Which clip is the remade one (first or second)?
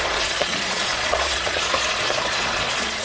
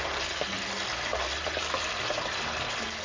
first